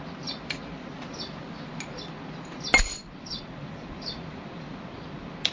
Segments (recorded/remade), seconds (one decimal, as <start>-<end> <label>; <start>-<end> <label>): 0.0-5.5 recorded